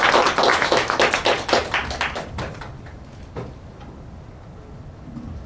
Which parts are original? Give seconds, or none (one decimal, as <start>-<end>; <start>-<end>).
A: 0.0-0.5; 1.1-5.5